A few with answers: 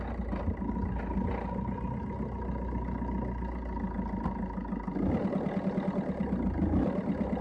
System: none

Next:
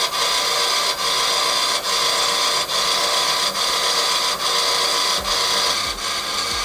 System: none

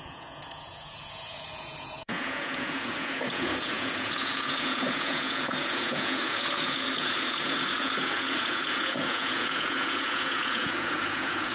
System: vocoder, Vocos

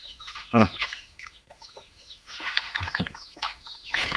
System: autoencoder, DAC-VAE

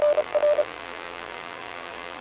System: vocoder, BigVGAN v2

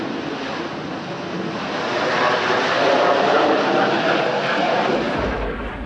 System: none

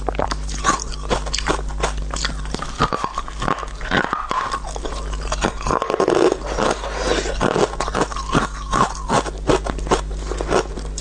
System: none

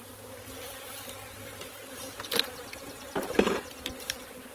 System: vocoder, BigVGAN v2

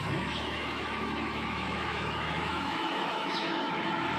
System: autoencoder, DAC-VAE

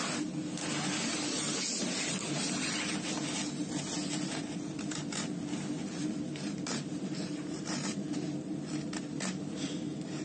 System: none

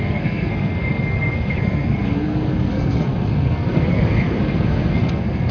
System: codec, SNAC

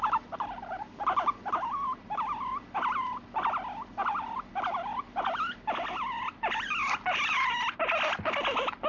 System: none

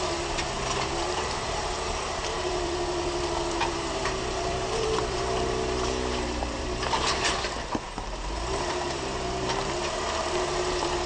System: vocoder, BigVGAN v2